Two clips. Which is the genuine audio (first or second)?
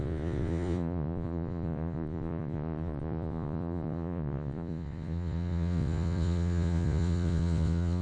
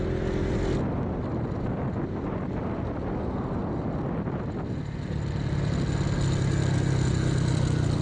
second